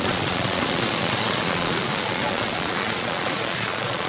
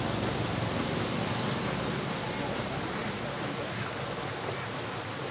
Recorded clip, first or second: second